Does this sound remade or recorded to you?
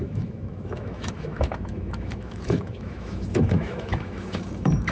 remade